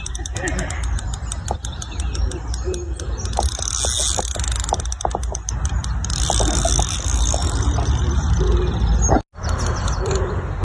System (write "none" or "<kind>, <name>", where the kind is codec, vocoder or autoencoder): none